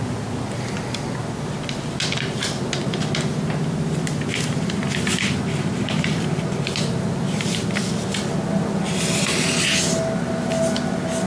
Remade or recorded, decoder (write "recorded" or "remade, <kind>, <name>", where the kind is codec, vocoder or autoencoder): recorded